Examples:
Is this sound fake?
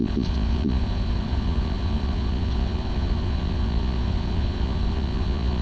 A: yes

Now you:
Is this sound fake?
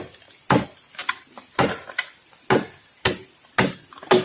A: no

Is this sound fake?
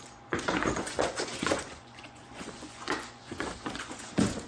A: yes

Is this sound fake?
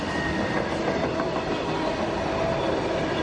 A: no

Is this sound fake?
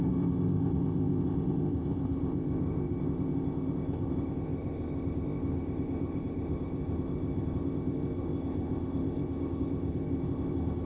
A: yes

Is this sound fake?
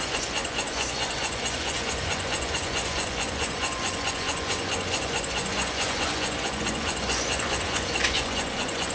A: yes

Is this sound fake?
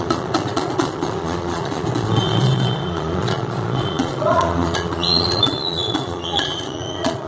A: yes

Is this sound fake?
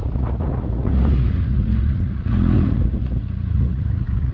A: yes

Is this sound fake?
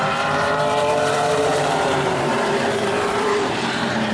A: yes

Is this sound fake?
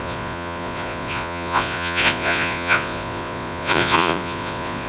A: yes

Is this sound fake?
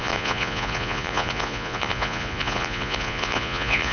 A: yes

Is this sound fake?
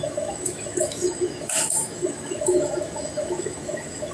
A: yes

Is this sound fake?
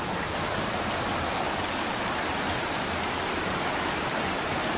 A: no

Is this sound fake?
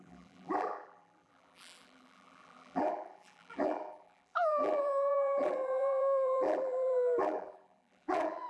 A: yes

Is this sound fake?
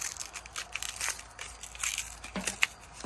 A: no